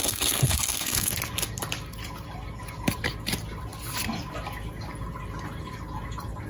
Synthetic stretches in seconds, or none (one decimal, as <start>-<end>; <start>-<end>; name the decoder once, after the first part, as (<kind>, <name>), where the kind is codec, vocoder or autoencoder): 0.0-1.1 (codec, SNAC)